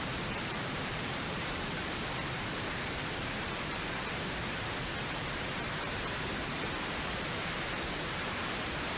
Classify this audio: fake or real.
fake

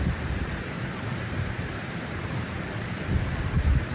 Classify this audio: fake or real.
fake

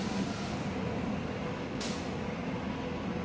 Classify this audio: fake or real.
real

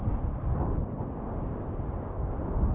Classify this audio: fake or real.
real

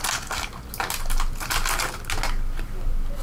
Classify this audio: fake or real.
real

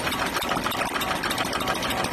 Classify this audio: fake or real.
real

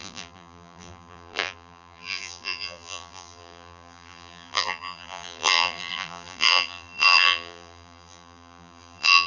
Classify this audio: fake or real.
fake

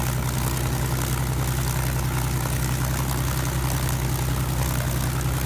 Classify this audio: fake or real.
real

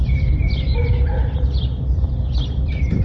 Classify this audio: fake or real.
fake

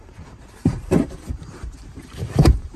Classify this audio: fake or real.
fake